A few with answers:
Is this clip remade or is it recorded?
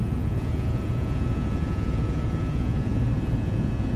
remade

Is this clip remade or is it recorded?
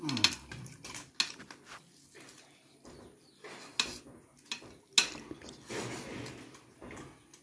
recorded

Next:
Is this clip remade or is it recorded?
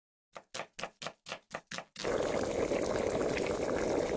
recorded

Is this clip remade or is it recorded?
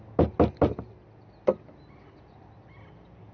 recorded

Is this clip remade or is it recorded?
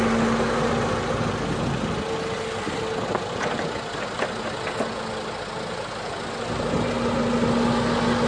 recorded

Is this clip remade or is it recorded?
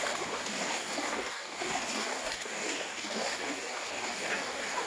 remade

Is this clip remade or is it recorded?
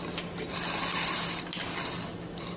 recorded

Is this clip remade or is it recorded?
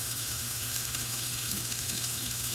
remade